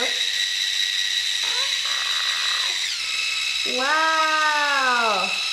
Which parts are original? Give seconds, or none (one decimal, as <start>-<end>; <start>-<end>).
0.0-5.5